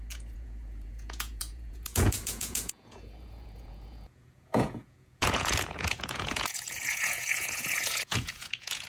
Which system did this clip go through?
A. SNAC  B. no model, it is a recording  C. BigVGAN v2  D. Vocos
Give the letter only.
D